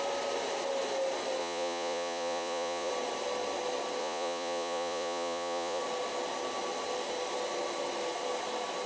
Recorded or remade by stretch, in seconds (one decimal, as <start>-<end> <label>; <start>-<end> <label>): 0.0-1.4 recorded; 1.4-2.9 remade; 2.9-4.0 recorded; 4.0-5.8 remade; 5.8-8.9 recorded